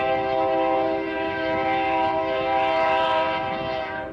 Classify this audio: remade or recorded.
remade